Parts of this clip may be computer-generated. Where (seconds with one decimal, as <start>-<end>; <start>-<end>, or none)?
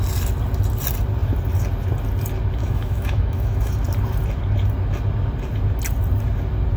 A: 2.6-3.7